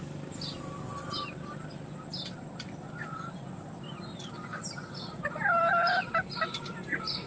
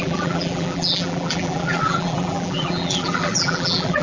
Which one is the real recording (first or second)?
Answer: first